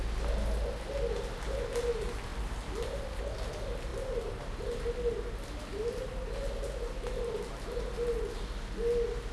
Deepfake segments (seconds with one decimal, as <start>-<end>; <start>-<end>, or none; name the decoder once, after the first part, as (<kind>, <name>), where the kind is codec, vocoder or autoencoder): 2.3-3.2 (vocoder, BigVGAN v2)

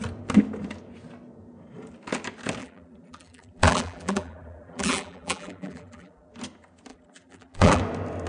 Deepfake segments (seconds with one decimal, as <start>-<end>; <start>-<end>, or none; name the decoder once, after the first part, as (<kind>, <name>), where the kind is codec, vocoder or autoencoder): 2.6-6.3 (vocoder, BigVGAN v2); 6.9-7.8

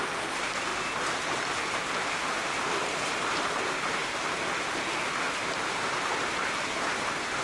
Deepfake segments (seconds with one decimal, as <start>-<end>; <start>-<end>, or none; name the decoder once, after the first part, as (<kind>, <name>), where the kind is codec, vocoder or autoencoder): 0.0-0.7 (vocoder, BigVGAN v2); 3.5-4.0; 5.1-7.4

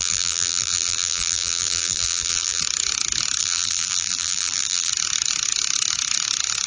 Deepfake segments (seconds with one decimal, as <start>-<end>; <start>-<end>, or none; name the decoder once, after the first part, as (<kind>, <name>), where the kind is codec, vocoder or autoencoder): 0.0-2.6 (vocoder, BigVGAN v2); 3.4-4.9

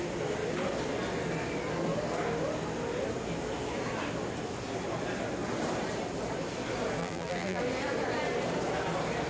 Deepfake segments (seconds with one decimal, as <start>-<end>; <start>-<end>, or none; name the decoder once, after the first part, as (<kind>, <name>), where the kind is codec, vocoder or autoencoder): 7.0-7.6 (vocoder, BigVGAN v2)

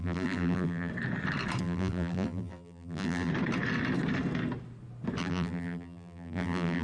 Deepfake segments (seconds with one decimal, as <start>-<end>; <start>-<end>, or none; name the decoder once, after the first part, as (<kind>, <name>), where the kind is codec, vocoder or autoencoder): 0.0-0.9 (vocoder, BigVGAN v2); 1.6-3.3; 5.2-6.8